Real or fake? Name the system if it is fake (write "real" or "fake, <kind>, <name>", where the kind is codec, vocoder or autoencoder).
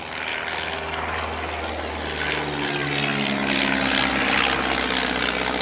real